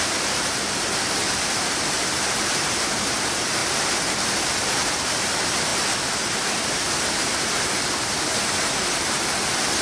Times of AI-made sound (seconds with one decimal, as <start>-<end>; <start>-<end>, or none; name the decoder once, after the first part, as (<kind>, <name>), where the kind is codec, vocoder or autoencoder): 0.0-3.6 (vocoder, BigVGAN v2); 4.9-9.8